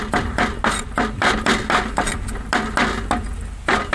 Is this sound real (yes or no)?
yes